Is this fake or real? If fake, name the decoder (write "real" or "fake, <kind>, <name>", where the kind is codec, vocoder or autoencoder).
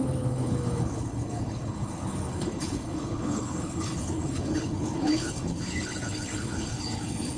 fake, codec, HILCodec